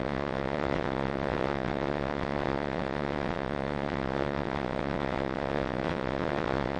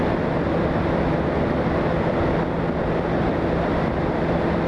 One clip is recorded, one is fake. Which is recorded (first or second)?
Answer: second